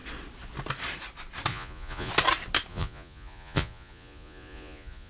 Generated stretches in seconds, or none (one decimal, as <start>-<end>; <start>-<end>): 1.5-2.1; 2.7-5.1